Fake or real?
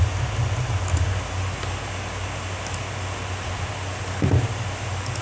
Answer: real